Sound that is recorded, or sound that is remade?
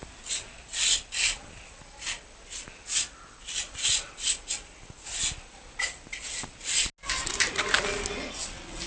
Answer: recorded